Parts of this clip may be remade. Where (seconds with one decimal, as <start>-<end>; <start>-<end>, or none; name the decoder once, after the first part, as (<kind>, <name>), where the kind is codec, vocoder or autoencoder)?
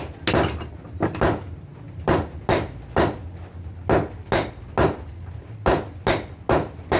none